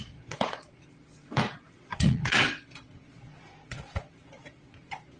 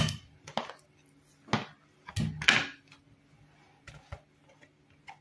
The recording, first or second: second